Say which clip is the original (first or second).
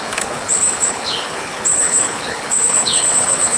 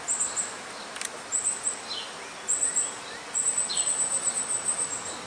second